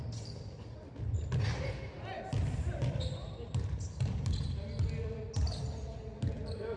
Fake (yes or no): no